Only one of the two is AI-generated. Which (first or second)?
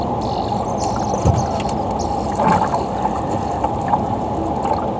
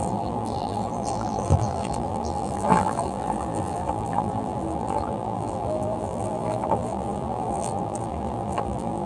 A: second